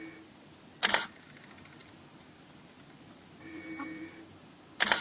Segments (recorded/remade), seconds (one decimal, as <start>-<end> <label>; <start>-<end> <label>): 0.0-1.8 recorded; 1.8-4.4 remade; 4.4-5.0 recorded